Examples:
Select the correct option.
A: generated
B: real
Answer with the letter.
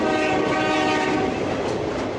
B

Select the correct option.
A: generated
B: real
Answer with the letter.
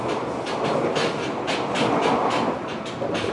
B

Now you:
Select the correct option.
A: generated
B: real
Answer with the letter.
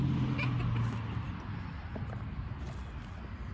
B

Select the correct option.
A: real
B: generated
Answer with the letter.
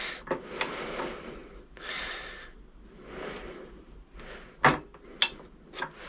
A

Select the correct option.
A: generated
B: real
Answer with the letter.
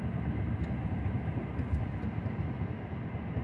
B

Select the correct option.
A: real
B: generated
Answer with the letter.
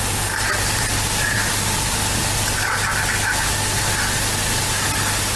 A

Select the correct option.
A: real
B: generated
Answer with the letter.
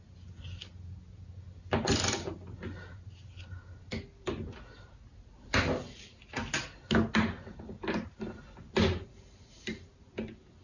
A